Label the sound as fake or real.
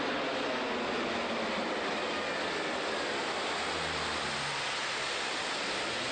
real